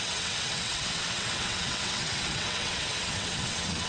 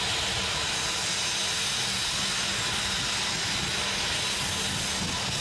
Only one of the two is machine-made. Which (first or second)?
first